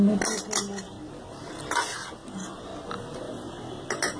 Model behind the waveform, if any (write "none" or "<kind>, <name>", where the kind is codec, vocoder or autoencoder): none